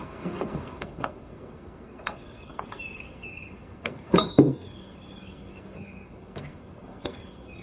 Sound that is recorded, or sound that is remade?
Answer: remade